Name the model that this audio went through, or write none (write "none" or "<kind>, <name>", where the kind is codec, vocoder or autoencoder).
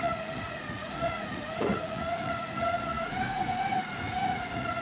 vocoder, Vocos